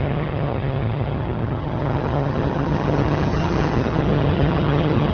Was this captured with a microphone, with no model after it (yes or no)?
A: no